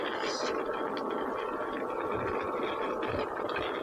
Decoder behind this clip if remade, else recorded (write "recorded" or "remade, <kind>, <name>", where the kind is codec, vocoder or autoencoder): recorded